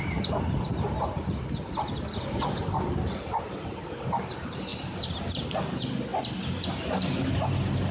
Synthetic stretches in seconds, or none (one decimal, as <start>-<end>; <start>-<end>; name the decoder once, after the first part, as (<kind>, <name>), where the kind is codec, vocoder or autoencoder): none